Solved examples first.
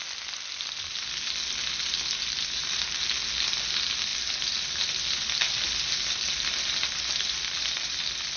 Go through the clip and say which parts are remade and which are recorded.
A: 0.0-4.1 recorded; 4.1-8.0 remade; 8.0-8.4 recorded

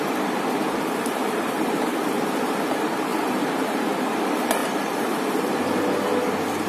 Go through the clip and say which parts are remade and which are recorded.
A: 0.0-1.2 recorded; 1.2-2.0 remade; 2.0-3.1 recorded; 3.1-3.9 remade; 3.9-4.6 recorded; 4.6-5.8 remade; 5.8-6.7 recorded

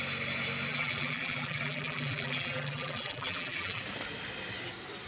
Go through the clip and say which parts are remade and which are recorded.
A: 0.0-0.7 recorded; 0.7-3.8 remade; 3.8-5.1 recorded

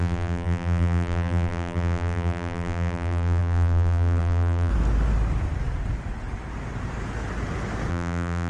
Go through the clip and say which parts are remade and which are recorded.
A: 0.0-4.7 remade; 4.7-7.9 recorded; 7.9-8.5 remade

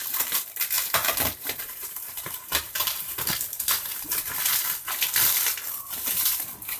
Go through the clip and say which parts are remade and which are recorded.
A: 0.0-1.0 recorded; 1.0-3.3 remade; 3.3-6.8 recorded